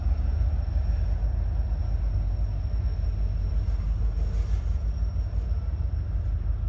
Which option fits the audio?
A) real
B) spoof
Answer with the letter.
A